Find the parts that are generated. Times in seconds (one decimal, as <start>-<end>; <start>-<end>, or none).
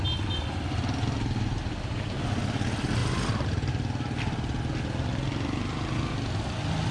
3.0-3.7